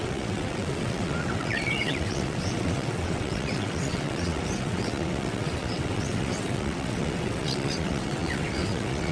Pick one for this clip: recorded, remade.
remade